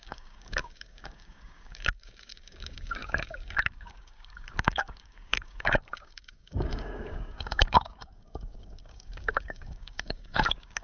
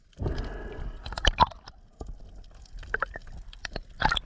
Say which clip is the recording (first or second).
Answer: second